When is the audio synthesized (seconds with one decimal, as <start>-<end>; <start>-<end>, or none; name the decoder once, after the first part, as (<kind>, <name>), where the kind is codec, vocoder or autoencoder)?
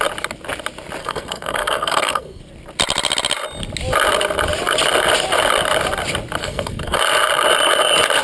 1.0-2.4 (codec, SNAC); 6.4-7.0